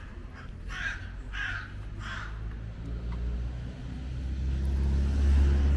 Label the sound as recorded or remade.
recorded